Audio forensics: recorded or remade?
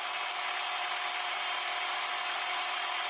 recorded